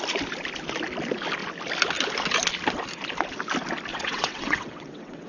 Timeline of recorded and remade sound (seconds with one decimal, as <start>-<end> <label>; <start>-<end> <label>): 0.0-3.9 recorded; 3.9-5.3 remade